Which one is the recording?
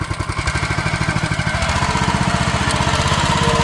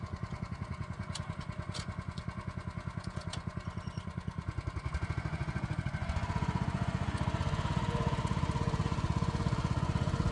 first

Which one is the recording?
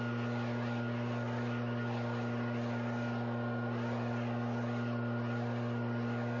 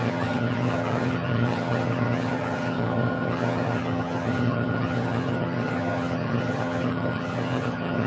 first